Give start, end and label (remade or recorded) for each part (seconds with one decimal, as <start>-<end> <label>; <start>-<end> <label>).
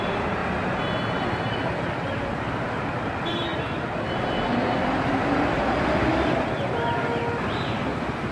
0.0-0.4 remade; 0.4-1.9 recorded; 1.9-6.0 remade; 6.0-7.4 recorded; 7.4-8.3 remade